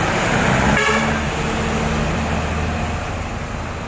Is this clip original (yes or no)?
yes